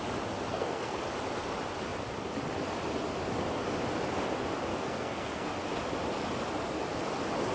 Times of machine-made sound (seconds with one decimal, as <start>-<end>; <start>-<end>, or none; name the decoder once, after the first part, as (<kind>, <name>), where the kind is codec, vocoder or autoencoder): 0.5-1.0 (codec, SNAC); 4.7-5.5